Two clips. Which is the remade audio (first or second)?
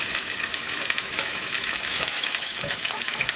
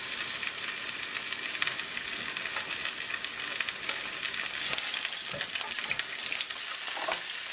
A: first